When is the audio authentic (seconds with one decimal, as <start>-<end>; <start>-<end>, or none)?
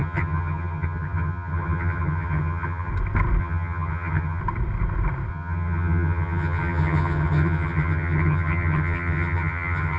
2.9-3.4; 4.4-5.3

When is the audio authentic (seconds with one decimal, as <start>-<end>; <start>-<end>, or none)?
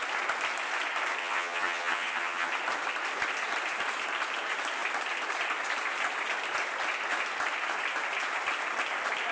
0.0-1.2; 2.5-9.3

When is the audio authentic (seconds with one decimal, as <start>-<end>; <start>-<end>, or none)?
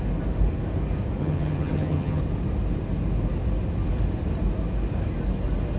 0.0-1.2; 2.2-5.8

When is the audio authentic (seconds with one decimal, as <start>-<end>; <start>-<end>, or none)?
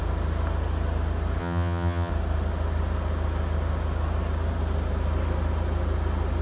0.0-1.4; 2.1-6.4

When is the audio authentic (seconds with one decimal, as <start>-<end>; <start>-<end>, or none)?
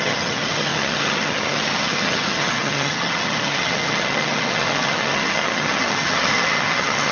none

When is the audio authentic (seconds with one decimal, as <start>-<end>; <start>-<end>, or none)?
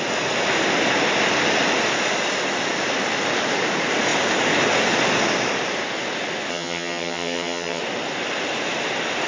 0.0-6.5; 7.8-9.3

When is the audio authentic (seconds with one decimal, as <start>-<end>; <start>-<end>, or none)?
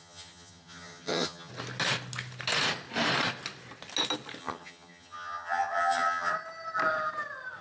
1.5-4.4; 6.3-7.6